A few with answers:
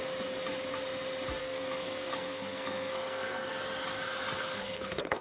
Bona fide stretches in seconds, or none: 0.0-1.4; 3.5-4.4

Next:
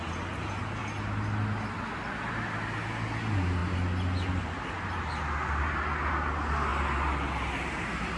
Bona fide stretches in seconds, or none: 0.0-8.2

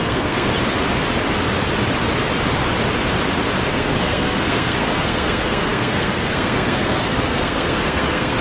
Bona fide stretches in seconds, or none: 0.5-3.7

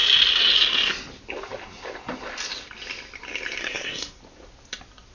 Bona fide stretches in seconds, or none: 0.0-3.6; 4.2-5.1

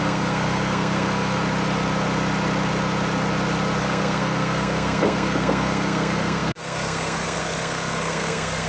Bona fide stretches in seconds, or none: 1.4-3.8

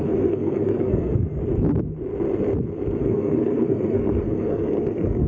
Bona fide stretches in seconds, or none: 1.4-3.0